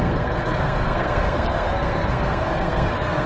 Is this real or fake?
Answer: fake